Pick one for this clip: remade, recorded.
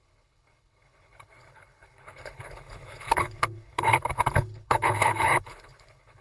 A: remade